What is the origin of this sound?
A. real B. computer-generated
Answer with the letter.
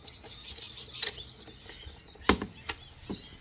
A